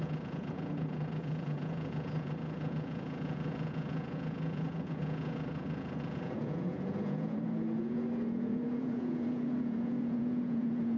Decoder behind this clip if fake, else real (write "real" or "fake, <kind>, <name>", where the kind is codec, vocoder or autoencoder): fake, vocoder, Vocos